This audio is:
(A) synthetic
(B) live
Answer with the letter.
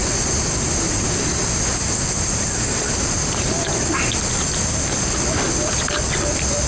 A